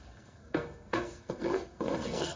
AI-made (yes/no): yes